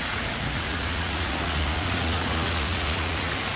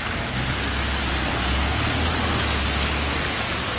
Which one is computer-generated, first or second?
first